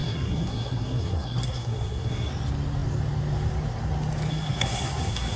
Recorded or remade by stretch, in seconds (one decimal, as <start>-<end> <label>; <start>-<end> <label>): 0.0-2.3 remade; 2.3-4.3 recorded; 4.3-5.4 remade